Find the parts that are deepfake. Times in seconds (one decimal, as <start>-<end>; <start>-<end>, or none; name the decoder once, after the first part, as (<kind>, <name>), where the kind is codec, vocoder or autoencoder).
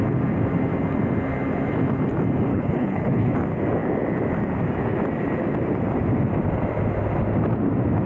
2.5-3.3 (codec, HILCodec)